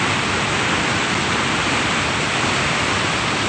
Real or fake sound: real